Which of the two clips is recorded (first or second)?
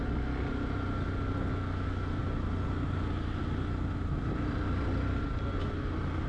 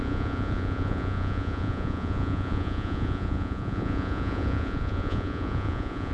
first